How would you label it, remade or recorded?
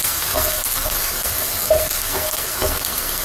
remade